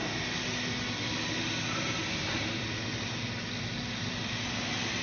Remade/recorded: recorded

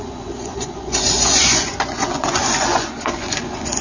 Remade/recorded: remade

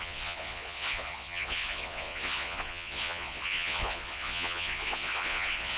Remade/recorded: remade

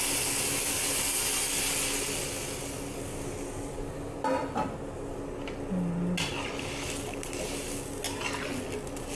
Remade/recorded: recorded